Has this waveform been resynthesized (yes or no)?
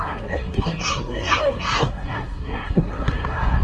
yes